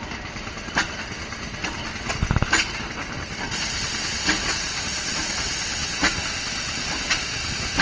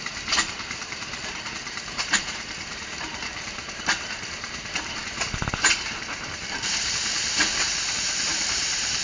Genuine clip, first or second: first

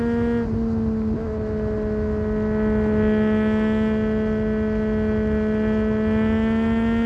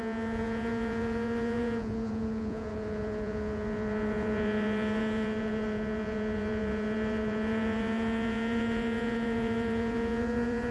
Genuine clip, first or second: first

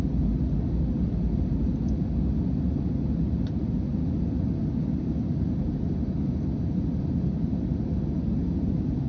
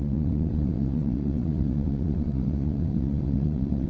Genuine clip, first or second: first